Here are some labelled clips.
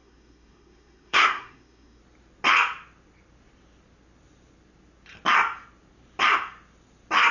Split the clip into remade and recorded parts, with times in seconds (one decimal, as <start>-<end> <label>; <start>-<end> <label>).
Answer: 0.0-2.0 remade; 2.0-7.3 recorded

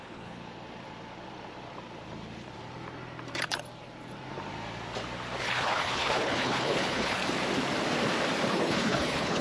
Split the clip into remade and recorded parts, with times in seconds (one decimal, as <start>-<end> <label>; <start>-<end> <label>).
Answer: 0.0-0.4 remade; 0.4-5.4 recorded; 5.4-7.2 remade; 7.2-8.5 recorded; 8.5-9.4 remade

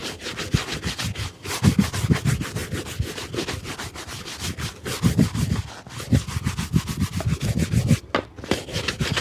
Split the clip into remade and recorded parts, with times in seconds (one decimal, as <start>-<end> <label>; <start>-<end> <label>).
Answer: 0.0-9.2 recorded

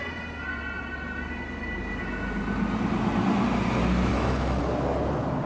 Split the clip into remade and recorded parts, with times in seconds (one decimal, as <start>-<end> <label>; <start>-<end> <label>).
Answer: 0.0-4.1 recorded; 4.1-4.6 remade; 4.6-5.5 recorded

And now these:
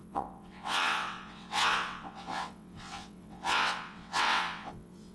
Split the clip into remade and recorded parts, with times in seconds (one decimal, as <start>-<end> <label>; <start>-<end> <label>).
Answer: 0.0-5.1 remade